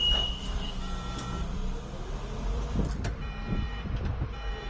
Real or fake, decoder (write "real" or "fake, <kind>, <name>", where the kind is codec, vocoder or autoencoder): fake, vocoder, BigVGAN v2